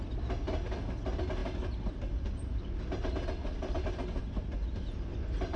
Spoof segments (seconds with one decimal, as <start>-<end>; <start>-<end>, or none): none

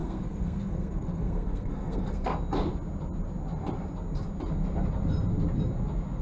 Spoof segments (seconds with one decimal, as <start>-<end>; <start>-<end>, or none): 0.0-2.3

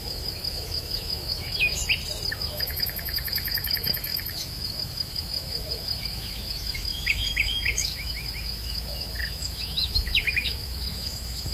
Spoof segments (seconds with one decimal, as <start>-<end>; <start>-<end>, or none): 0.0-1.8; 2.3-11.5

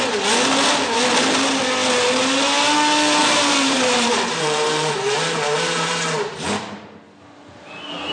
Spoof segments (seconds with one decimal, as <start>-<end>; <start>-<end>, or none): 3.2-7.0